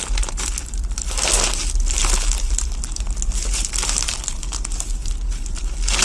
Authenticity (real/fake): real